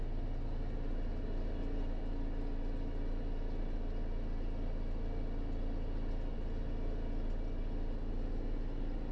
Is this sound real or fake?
real